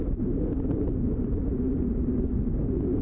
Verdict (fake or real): real